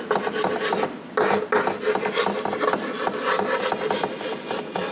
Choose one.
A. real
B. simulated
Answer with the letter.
A